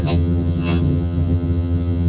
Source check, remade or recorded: remade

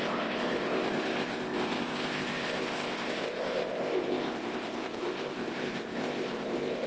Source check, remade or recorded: remade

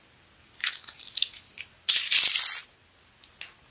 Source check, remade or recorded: recorded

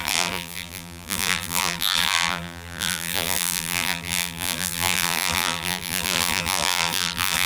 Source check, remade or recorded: remade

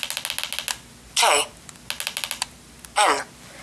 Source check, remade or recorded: recorded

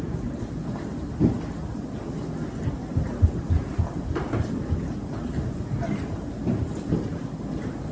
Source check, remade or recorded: recorded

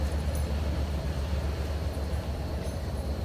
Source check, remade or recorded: recorded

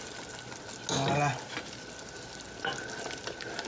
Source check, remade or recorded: recorded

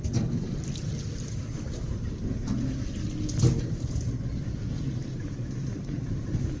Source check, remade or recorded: recorded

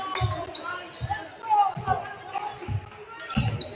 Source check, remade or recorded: recorded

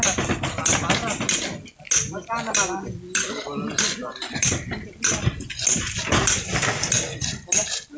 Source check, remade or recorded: recorded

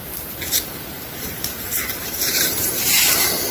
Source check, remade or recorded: remade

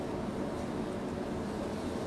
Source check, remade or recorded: recorded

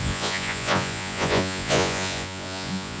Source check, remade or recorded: remade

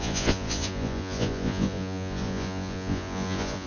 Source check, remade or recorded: remade